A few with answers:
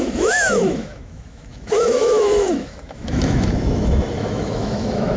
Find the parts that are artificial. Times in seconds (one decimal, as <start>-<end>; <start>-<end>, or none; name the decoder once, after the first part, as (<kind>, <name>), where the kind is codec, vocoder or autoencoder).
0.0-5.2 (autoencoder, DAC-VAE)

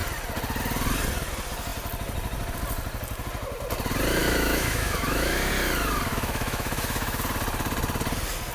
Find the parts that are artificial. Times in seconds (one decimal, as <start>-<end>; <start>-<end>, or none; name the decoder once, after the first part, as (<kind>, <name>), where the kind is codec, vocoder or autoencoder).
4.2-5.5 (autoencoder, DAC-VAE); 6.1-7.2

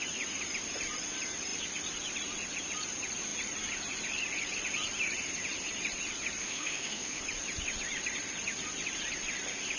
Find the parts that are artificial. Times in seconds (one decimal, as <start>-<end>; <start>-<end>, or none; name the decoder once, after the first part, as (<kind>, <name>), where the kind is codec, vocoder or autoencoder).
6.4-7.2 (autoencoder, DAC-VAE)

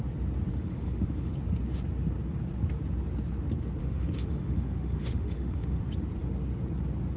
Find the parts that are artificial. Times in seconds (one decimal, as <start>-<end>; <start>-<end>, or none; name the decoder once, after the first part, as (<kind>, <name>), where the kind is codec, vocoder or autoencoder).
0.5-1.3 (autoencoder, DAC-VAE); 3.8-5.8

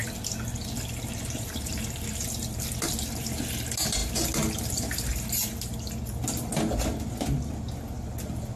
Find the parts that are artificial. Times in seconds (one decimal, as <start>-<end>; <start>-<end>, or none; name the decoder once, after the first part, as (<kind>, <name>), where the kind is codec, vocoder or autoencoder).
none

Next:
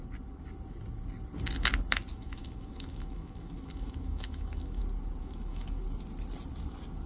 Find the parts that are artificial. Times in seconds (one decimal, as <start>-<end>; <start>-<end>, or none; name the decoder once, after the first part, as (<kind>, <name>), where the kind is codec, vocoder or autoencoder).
2.1-4.8 (autoencoder, DAC-VAE); 5.2-5.8

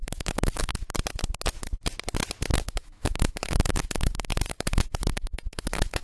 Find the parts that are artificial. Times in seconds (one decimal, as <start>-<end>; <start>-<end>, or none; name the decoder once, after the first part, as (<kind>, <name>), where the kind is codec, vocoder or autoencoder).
0.0-0.7 (autoencoder, DAC-VAE); 2.6-6.0

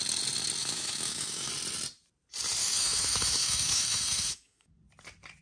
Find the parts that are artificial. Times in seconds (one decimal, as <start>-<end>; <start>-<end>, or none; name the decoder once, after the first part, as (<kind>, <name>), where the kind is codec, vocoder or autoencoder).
0.6-1.5 (autoencoder, DAC-VAE); 2.6-4.7